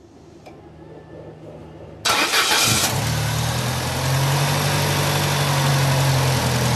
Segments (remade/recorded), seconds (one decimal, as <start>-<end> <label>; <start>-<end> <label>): 0.0-6.8 recorded